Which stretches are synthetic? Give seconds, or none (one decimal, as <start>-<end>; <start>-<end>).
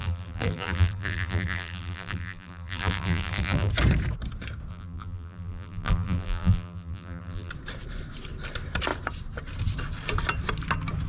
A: 0.0-3.7; 4.7-7.5